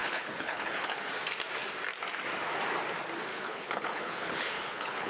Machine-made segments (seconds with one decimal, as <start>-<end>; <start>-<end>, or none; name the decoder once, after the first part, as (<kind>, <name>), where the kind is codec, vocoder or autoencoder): 0.0-1.1 (codec, HILCodec); 3.3-5.1